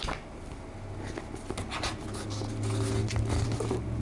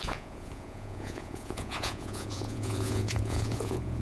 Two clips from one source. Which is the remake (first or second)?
second